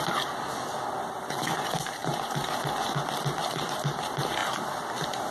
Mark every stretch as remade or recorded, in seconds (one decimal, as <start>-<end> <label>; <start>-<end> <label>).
0.0-5.3 recorded

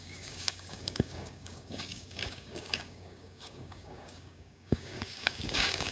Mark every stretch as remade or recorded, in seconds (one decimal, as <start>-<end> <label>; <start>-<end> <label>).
0.0-5.9 remade

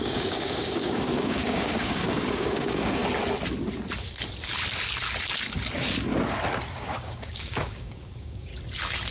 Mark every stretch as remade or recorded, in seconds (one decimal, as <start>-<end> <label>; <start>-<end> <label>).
0.0-3.0 remade; 3.0-6.7 recorded; 6.7-8.5 remade; 8.5-9.1 recorded